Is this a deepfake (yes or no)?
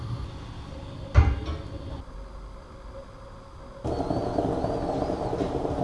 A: no